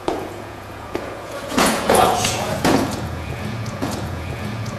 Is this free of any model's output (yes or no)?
no